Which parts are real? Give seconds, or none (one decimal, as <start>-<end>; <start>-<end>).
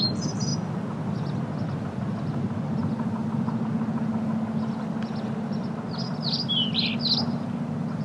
0.0-8.0